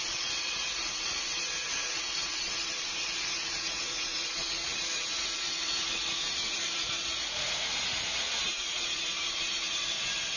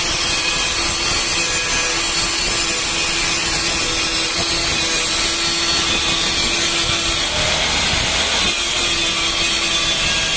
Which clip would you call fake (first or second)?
first